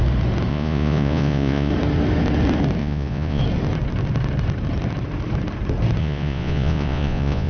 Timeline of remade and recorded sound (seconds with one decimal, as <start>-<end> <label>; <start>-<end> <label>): 0.0-0.5 recorded; 0.5-1.7 remade; 1.7-2.8 recorded; 2.8-3.4 remade; 3.4-6.0 recorded; 6.0-7.5 remade